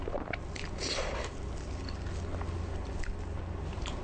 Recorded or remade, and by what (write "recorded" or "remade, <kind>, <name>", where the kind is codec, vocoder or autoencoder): recorded